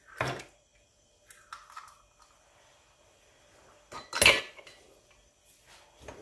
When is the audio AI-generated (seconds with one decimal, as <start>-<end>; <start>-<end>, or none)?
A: none